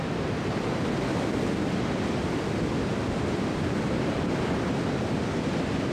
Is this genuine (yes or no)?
no